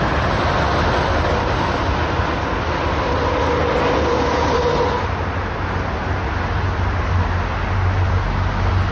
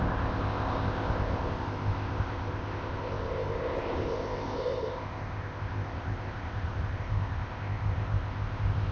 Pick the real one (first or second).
first